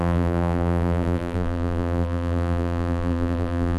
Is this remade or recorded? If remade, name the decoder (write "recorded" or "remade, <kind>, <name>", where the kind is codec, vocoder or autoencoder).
remade, vocoder, BigVGAN v2